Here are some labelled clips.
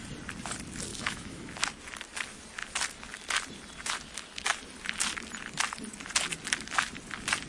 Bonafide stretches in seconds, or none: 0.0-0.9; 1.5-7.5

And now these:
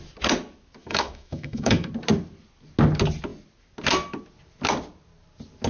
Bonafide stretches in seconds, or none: 0.0-0.8; 1.9-5.7

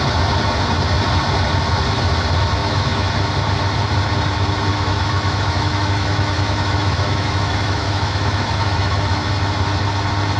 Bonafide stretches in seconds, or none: 0.0-2.6; 3.1-4.7; 9.3-10.4

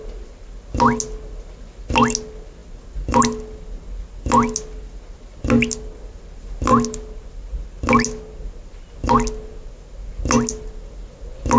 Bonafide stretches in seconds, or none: 0.0-11.6